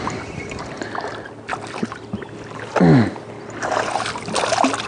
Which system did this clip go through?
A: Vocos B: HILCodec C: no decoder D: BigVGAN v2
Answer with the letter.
C